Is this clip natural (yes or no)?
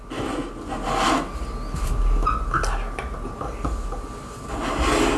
yes